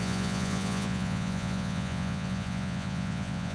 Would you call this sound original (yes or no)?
no